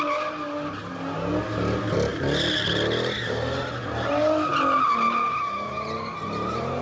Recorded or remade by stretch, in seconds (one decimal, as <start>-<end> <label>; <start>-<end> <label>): 0.0-6.8 recorded